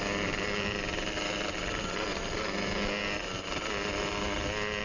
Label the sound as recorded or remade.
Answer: recorded